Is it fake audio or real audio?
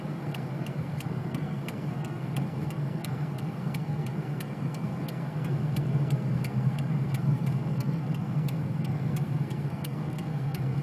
fake